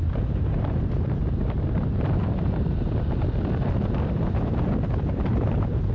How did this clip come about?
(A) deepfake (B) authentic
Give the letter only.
A